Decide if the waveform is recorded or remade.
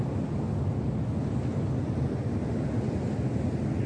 recorded